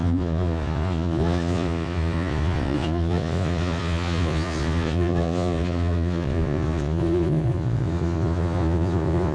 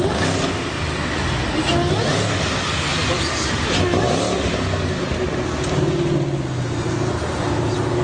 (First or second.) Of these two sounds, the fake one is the first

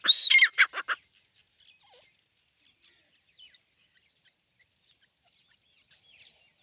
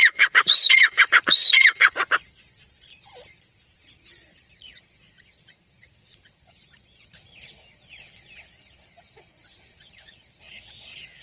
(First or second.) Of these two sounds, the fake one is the second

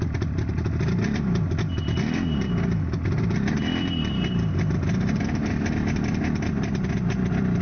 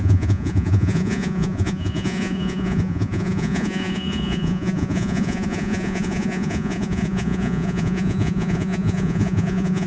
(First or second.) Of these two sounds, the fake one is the second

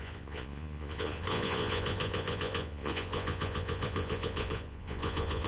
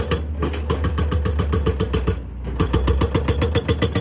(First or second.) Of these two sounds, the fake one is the first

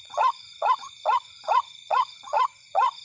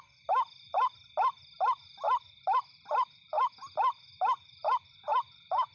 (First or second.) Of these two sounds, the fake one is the first